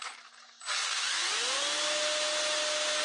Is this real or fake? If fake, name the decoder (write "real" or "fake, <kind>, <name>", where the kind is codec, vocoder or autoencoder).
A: real